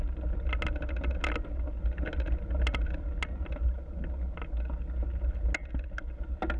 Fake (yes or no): no